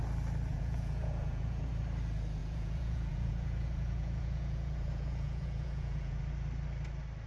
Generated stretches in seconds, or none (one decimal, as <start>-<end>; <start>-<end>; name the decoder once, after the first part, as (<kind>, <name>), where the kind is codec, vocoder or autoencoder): 0.5-1.7 (vocoder, Vocos); 2.4-6.2